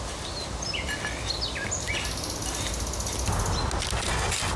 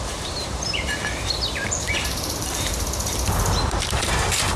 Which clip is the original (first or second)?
first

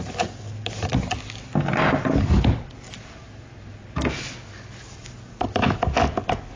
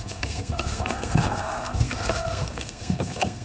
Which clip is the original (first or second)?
first